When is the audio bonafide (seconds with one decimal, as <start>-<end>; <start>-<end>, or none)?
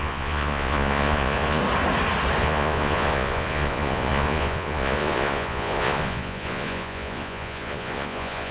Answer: 1.6-2.4